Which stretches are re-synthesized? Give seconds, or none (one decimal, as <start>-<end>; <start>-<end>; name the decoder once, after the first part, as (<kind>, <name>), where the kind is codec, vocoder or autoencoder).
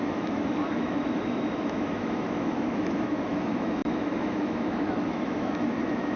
0.0-6.2 (autoencoder, DAC-VAE)